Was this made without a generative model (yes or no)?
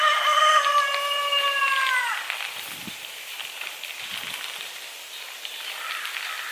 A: yes